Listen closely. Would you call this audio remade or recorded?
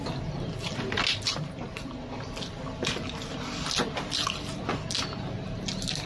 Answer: recorded